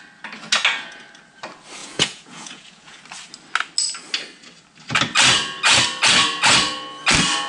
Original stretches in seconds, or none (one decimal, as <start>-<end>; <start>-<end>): 0.0-1.8; 3.0-7.5